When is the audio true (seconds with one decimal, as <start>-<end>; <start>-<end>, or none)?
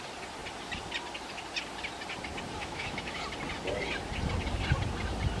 0.0-2.6; 3.2-5.4